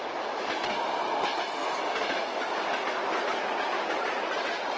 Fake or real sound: real